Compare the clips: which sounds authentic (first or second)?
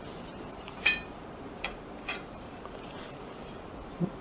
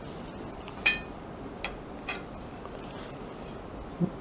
second